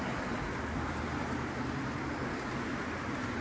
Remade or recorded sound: recorded